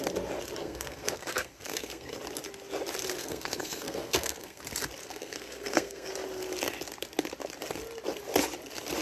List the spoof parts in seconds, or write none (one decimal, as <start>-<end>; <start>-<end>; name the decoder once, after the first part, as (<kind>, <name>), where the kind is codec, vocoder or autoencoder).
0.6-2.2 (codec, SNAC); 3.2-4.6; 5.0-6.1